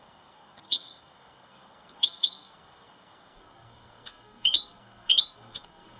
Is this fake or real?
fake